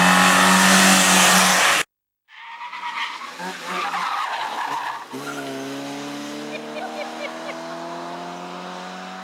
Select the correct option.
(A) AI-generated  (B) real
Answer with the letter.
B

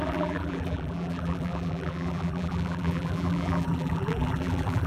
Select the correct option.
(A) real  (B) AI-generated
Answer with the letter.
B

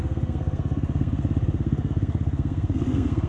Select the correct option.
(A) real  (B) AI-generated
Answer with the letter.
B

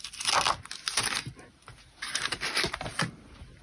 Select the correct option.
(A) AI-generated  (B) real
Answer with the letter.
B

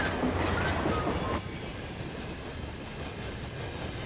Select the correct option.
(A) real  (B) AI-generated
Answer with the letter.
A